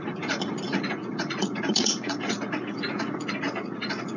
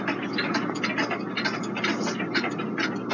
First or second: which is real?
second